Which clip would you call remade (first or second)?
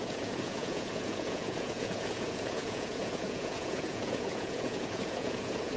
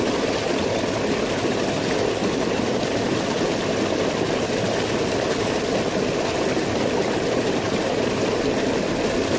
first